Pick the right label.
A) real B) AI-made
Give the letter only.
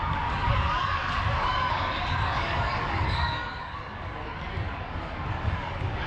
B